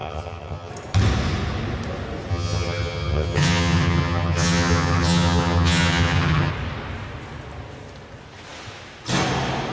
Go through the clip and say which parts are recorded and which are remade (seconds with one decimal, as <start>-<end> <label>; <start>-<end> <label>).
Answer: 0.0-0.7 remade; 0.7-2.3 recorded; 2.3-6.5 remade; 6.5-9.7 recorded